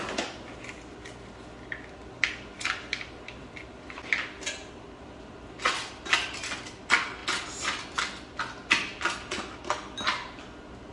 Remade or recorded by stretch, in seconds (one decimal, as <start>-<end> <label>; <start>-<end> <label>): 0.0-10.9 recorded